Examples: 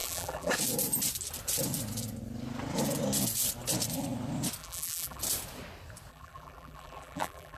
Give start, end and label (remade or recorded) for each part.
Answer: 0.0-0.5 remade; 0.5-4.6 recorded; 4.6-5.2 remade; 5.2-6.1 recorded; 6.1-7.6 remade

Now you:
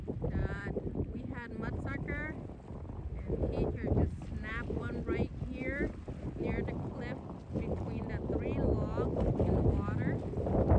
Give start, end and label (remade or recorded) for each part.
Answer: 0.0-0.4 recorded; 0.4-1.2 remade; 1.2-10.8 recorded

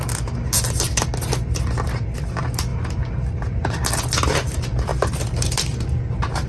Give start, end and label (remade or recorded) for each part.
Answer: 0.0-2.7 recorded; 2.7-4.0 remade; 4.0-4.9 recorded; 4.9-6.5 remade

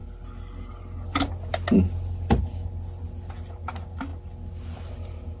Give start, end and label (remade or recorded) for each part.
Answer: 0.0-5.4 recorded

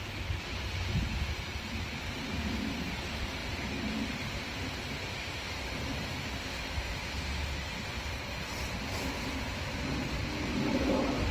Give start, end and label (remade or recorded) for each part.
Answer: 0.0-11.3 recorded

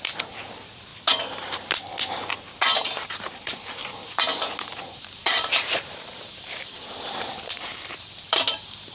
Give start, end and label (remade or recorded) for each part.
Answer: 0.0-0.9 remade; 0.9-2.4 recorded; 2.4-3.8 remade; 3.8-4.8 recorded; 4.8-8.9 remade

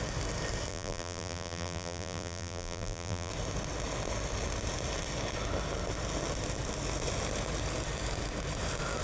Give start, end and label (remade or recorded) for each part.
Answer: 0.0-0.7 recorded; 0.7-3.3 remade; 3.3-9.0 recorded

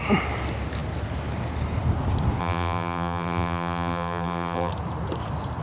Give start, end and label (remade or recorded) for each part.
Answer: 0.0-2.4 recorded; 2.4-4.7 remade; 4.7-5.6 recorded